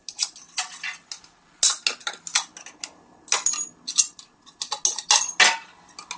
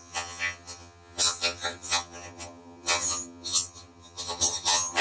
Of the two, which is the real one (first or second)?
first